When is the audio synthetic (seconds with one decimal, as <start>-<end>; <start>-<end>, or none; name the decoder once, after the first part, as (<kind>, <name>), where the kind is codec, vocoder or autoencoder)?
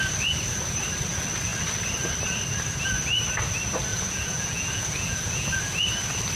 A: 3.9-5.5 (vocoder, Vocos)